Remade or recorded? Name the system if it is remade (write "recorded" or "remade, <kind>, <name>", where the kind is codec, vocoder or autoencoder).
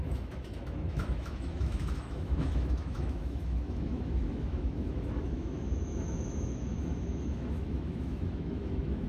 remade, autoencoder, DAC-VAE